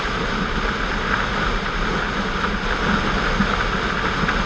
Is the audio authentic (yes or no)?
yes